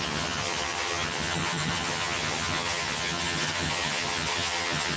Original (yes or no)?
no